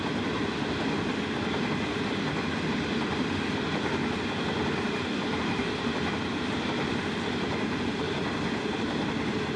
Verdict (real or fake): real